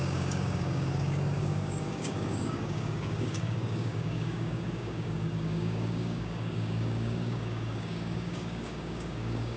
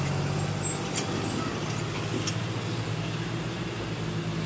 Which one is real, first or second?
second